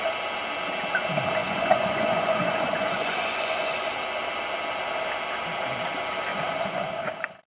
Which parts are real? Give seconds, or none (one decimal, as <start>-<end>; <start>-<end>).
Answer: 0.0-1.4; 3.9-6.3; 7.1-7.5